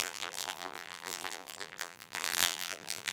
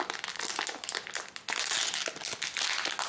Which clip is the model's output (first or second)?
first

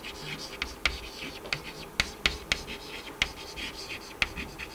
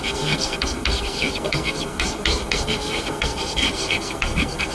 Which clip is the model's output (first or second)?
second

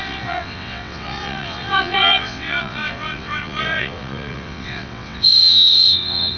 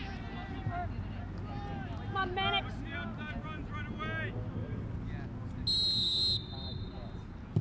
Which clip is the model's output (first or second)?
first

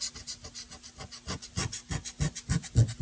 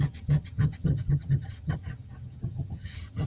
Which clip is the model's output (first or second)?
second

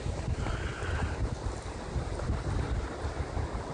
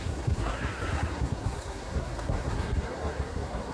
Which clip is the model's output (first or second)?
second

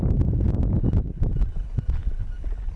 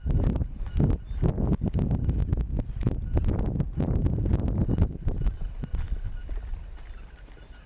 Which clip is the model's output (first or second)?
second